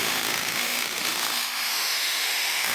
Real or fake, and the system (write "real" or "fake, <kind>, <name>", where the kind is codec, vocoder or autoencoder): fake, autoencoder, DAC-VAE